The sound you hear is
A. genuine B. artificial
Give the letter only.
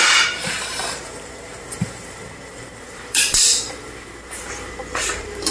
B